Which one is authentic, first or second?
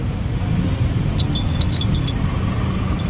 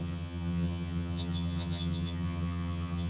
first